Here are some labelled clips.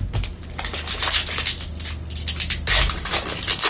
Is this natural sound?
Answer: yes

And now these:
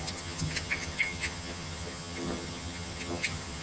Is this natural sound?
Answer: no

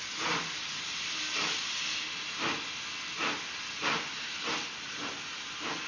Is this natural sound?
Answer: yes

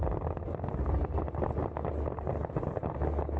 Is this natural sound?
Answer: yes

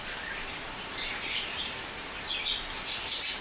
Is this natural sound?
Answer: yes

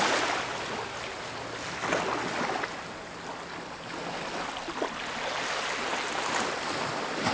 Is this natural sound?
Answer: yes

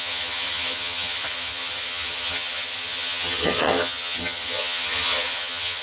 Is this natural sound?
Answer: no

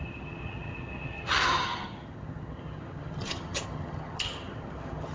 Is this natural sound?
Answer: no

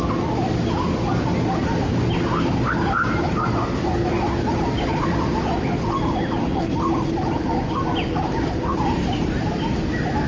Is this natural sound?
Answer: yes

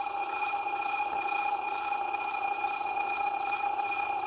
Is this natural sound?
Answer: no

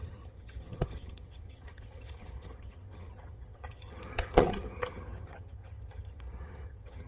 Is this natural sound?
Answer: no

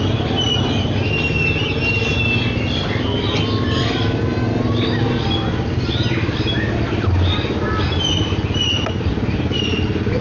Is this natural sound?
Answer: yes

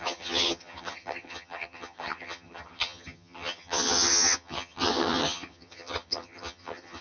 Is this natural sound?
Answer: no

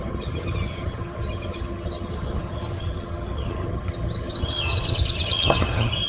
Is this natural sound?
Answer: no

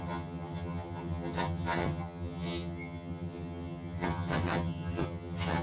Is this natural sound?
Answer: no